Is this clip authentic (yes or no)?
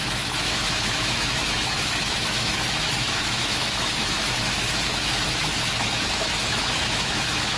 no